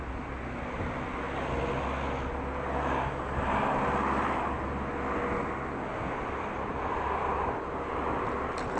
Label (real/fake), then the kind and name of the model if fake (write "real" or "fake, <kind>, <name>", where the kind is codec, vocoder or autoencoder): real